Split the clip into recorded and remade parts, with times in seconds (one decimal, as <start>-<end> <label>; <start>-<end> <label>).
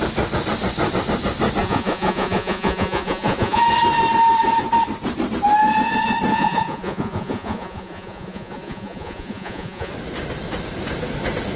0.0-1.6 recorded; 1.6-3.6 remade; 3.6-6.3 recorded; 6.3-9.9 remade; 9.9-11.6 recorded